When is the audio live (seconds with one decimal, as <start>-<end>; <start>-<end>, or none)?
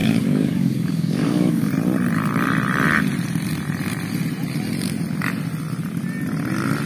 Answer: 1.7-6.9